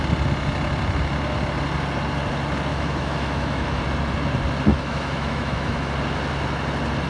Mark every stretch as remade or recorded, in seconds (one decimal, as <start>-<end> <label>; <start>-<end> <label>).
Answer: 0.0-2.7 recorded; 2.7-3.8 remade; 3.8-4.7 recorded; 4.7-5.9 remade; 5.9-7.1 recorded